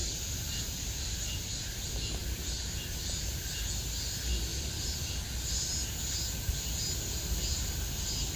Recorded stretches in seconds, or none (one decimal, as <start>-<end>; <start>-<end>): 1.4-8.4